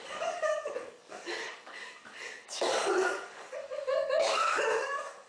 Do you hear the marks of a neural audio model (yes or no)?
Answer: yes